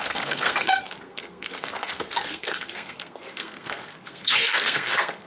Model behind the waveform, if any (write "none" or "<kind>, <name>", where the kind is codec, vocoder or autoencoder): codec, SNAC